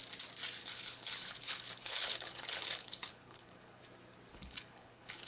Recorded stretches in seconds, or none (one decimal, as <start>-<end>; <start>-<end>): 0.0-0.6; 3.8-4.3